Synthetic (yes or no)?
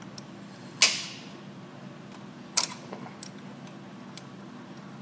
no